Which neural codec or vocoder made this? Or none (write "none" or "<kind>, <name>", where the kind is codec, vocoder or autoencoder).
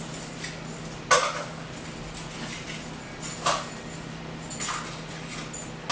none